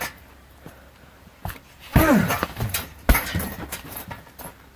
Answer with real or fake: fake